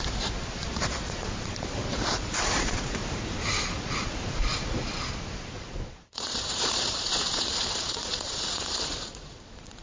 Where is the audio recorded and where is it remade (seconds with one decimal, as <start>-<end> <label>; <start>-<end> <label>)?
0.0-3.0 remade; 3.0-3.6 recorded; 3.6-9.8 remade